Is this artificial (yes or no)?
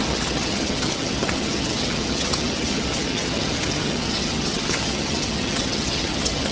yes